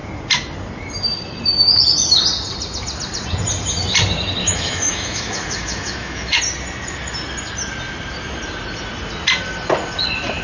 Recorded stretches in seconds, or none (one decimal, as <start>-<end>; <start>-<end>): 0.0-4.4; 6.4-10.4